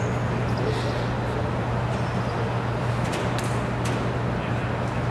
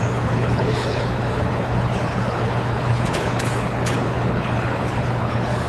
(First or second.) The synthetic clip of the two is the second